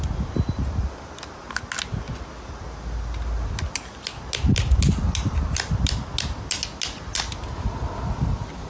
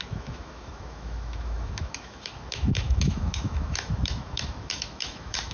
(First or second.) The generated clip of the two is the second